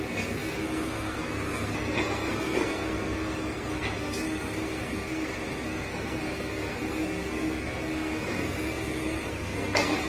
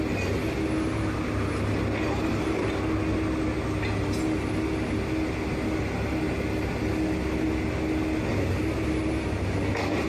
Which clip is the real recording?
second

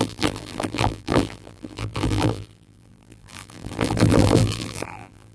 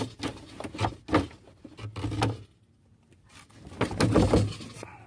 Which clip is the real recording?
second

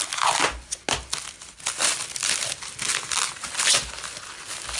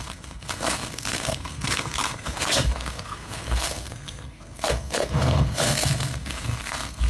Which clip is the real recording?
first